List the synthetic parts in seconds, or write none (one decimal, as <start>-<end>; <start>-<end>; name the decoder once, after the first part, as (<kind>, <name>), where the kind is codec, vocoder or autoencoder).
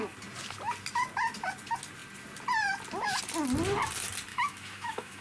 4.3-5.2 (autoencoder, DAC-VAE)